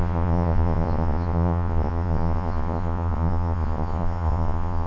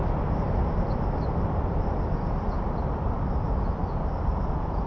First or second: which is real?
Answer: second